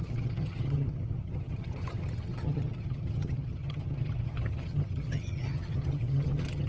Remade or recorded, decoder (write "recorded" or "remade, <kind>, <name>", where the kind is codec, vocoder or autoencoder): remade, vocoder, HiFi-GAN